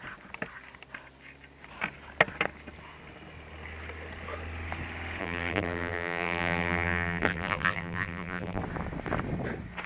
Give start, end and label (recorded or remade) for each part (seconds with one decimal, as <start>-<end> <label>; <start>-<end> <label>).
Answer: 0.0-5.2 recorded; 5.2-8.6 remade; 8.6-9.9 recorded